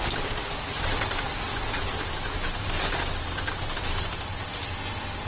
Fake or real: real